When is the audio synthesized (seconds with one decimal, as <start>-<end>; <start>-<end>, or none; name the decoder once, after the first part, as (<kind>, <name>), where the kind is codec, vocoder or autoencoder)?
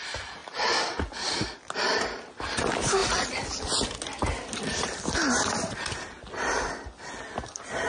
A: 0.4-1.0 (vocoder, BigVGAN v2)